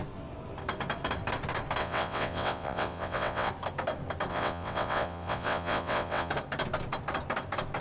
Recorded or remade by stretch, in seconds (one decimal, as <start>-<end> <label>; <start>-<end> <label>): 0.0-1.8 recorded; 1.8-3.5 remade; 3.5-4.3 recorded; 4.3-6.3 remade; 6.3-7.8 recorded